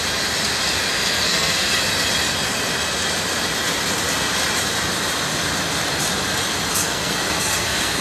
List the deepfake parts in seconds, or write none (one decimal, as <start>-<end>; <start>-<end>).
0.9-1.8; 6.7-8.0